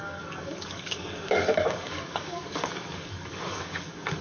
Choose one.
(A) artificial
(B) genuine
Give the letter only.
A